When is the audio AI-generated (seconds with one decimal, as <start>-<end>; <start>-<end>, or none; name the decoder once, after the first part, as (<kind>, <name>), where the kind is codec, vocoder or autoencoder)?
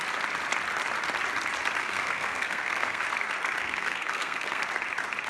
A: 1.8-3.0 (codec, SNAC); 3.6-4.6